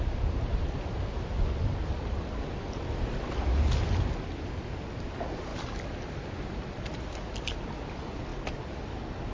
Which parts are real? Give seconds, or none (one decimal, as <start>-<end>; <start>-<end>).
0.0-9.3